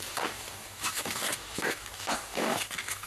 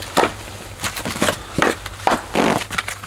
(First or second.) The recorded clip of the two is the second